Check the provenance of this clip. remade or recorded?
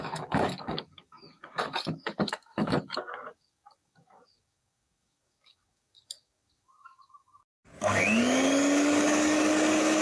remade